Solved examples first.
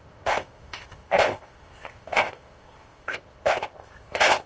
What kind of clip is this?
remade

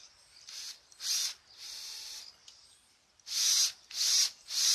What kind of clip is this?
recorded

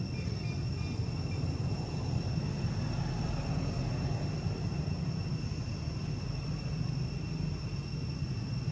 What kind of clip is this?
recorded